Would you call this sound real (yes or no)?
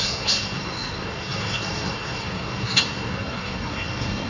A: no